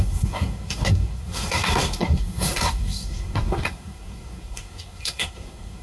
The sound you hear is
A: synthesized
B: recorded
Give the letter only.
A